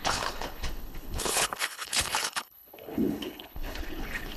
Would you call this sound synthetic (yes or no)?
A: yes